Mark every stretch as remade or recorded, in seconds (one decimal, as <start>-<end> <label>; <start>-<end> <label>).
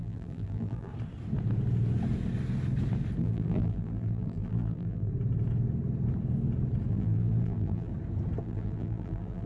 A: 0.0-0.9 remade; 0.9-3.2 recorded; 3.2-5.1 remade; 5.1-6.9 recorded; 6.9-7.9 remade; 7.9-8.4 recorded; 8.4-9.5 remade